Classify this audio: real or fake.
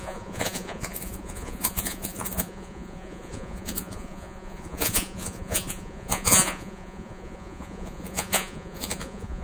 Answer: fake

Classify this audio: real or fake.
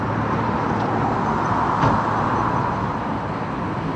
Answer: real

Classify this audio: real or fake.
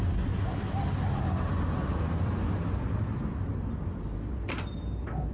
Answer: real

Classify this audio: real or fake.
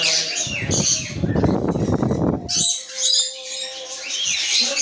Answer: real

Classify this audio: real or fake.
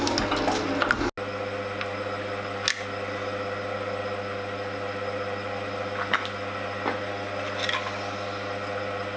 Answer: real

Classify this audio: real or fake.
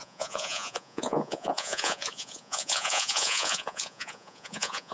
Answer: fake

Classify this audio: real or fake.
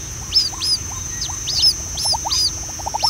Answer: real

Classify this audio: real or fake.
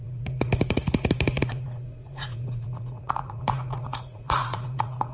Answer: fake